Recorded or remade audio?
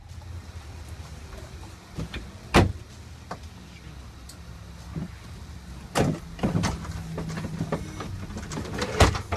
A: recorded